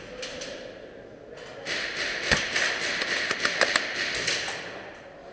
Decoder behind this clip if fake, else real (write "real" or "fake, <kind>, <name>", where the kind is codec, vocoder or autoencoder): real